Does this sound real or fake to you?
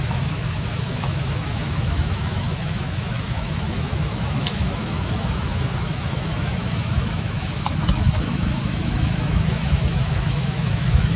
fake